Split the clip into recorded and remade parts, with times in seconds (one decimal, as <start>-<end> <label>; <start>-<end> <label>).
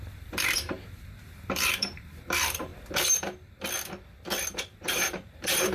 0.0-2.7 remade; 2.7-4.8 recorded; 4.8-5.7 remade